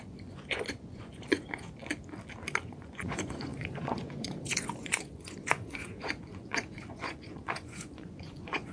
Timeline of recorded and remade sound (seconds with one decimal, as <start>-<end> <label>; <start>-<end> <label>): 0.0-1.8 remade; 1.8-2.6 recorded; 2.6-8.7 remade